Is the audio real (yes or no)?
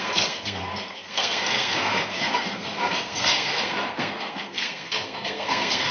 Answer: no